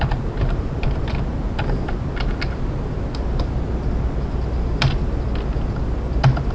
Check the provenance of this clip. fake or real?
real